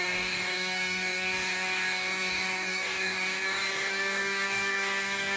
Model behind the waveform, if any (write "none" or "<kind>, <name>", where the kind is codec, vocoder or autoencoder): codec, DAC